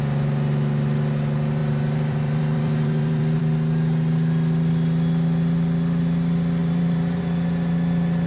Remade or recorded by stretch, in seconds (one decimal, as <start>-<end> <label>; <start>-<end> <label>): 0.0-1.6 recorded; 1.6-3.4 remade; 3.4-6.6 recorded; 6.6-7.2 remade; 7.2-8.3 recorded